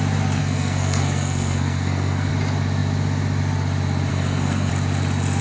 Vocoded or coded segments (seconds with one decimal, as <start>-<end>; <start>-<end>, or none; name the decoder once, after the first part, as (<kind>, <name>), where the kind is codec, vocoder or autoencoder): 0.4-2.3 (codec, SNAC); 4.1-4.7